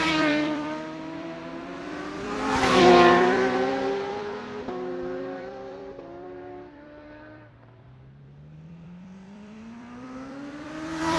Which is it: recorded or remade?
remade